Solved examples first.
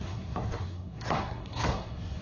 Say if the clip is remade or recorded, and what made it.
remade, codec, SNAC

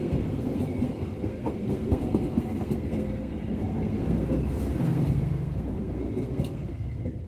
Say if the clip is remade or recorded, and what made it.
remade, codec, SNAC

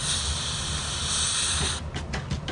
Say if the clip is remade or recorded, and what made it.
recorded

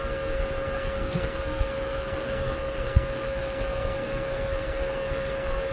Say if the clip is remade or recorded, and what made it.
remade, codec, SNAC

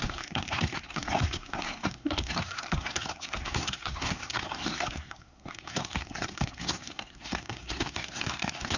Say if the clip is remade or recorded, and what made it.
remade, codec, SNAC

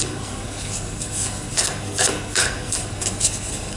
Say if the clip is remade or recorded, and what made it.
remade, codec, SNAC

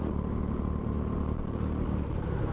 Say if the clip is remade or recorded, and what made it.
recorded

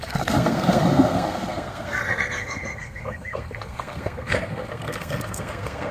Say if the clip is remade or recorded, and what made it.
remade, codec, SNAC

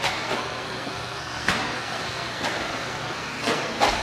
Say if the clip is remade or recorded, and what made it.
remade, codec, SNAC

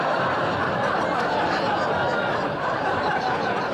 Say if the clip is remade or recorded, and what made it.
recorded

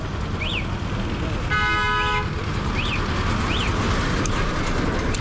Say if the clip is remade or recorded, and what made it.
recorded